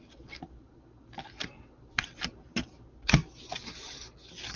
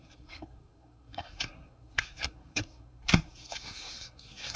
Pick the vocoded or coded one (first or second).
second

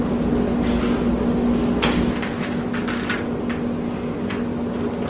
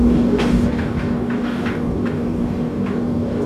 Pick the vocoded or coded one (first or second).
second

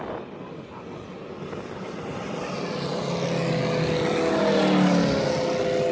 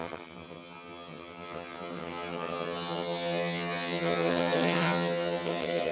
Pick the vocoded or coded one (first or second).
second